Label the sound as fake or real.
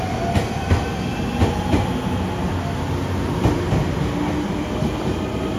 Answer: real